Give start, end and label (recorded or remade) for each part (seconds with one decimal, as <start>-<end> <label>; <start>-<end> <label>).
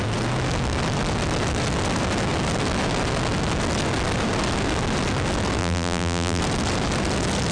0.0-5.6 recorded; 5.6-6.4 remade; 6.4-7.5 recorded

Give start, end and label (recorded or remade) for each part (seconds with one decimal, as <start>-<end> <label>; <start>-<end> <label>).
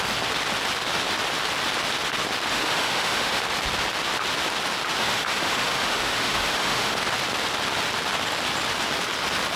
0.0-2.5 recorded; 2.5-3.4 remade; 3.4-5.0 recorded; 5.0-7.0 remade; 7.0-9.6 recorded